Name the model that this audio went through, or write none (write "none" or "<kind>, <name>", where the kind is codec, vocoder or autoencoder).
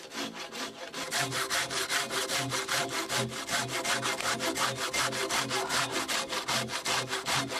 none